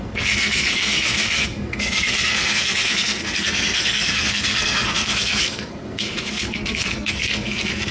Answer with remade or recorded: remade